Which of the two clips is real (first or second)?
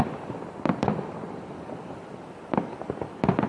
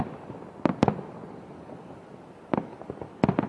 second